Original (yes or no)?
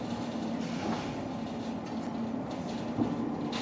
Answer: yes